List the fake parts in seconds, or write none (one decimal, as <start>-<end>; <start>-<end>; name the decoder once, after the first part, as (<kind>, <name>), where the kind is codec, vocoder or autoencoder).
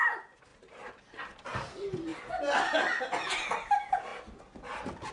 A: 0.5-1.0 (vocoder, BigVGAN v2)